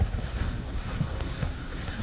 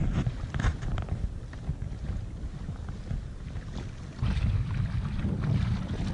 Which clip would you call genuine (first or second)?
second